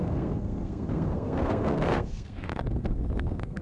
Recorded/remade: remade